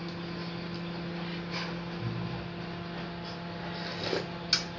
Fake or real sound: real